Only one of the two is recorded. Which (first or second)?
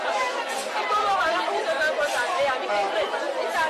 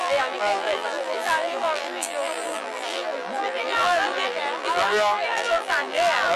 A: first